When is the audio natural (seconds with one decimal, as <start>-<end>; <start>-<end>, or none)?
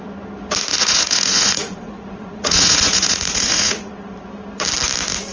0.0-0.7; 3.9-5.3